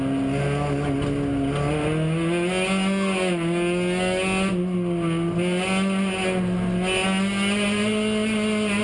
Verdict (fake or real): real